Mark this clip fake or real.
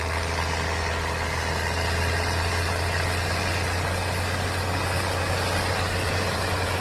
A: real